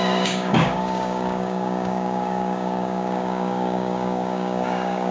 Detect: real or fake fake